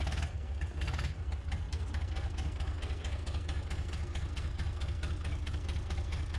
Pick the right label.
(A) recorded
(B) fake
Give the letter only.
B